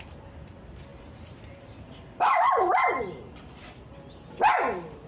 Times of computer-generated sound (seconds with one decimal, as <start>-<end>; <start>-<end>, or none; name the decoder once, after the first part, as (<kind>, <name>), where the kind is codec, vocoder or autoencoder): 0.9-4.0 (vocoder, BigVGAN v2)